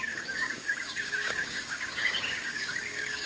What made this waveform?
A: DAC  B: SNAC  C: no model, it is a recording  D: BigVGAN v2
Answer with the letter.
A